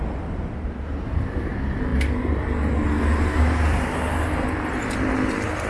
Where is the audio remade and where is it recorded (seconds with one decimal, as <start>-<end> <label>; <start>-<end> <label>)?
0.0-0.9 recorded; 0.9-1.5 remade; 1.5-5.7 recorded